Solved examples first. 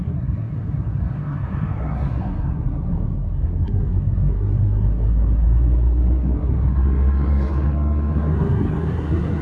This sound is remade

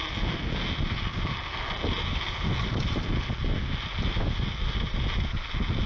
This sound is recorded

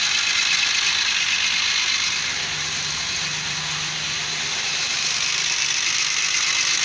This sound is recorded